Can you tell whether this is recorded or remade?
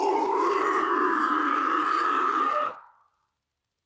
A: recorded